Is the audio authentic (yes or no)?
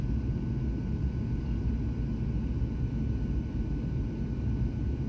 yes